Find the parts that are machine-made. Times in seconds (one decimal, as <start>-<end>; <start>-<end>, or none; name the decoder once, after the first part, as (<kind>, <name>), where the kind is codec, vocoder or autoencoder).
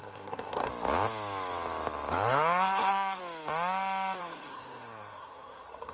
0.0-0.7 (codec, SNAC); 2.1-3.2; 4.2-5.9